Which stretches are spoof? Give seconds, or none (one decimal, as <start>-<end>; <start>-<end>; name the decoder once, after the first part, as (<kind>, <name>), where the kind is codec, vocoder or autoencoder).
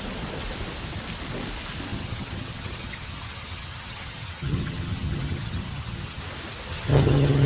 1.9-6.2 (vocoder, HiFi-GAN); 6.7-7.5